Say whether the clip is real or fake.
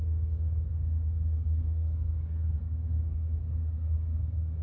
fake